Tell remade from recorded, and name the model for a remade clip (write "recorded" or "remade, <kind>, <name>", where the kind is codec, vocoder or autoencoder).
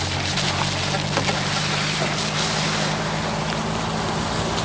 recorded